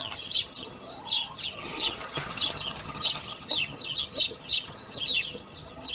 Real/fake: fake